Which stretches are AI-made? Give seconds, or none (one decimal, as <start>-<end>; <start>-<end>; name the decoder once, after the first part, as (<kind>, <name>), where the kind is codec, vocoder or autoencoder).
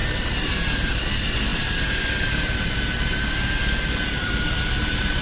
none